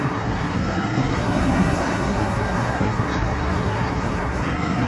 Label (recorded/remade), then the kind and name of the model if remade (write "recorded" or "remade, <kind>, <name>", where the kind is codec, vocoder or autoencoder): remade, codec, SNAC